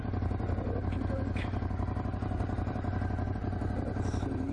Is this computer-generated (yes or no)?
no